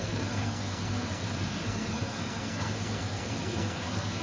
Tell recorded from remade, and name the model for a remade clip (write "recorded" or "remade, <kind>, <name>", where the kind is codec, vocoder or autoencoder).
remade, codec, SNAC